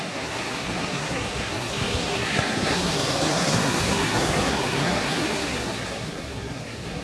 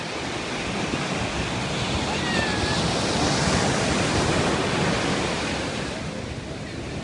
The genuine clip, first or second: second